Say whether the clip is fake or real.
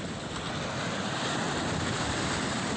real